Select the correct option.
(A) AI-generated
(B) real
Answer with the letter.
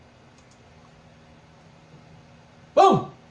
A